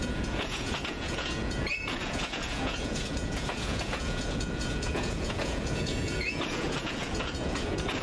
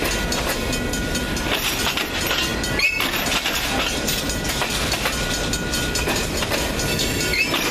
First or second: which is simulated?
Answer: first